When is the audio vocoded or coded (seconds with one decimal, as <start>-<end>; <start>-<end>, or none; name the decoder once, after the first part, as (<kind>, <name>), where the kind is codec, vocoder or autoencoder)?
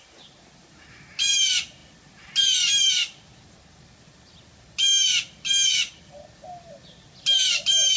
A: none